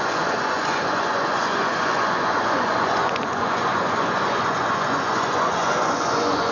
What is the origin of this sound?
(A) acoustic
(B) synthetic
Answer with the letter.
B